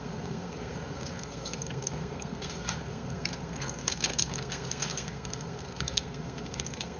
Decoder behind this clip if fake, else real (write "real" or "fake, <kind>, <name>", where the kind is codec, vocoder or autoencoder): fake, codec, SNAC